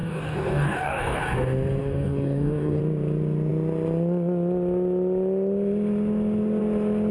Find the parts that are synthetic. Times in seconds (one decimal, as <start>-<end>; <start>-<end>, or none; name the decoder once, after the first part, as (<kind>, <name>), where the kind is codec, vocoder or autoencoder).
0.0-1.2 (codec, DAC); 1.8-2.8